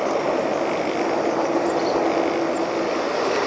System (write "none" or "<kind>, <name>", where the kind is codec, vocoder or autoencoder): none